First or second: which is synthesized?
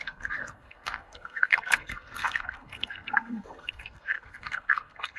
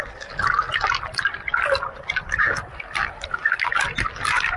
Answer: first